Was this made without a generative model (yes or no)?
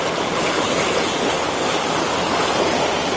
yes